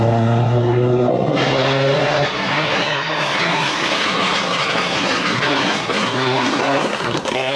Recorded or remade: remade